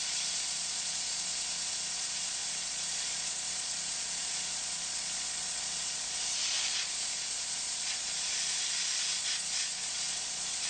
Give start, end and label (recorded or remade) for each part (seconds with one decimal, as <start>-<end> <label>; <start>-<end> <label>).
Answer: 0.0-10.7 remade